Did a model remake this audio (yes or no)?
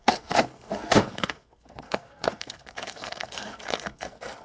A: yes